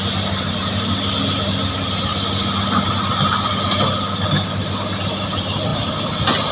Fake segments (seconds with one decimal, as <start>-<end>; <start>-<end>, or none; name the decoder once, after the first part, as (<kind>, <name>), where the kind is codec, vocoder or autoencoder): none